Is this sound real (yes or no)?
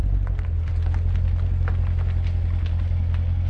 yes